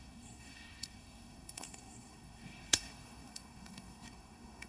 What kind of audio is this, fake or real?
fake